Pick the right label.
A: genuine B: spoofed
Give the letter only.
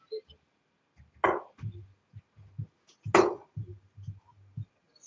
A